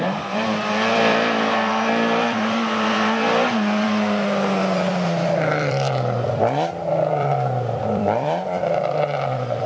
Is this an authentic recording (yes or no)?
no